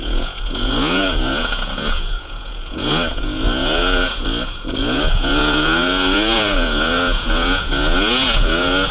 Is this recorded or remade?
remade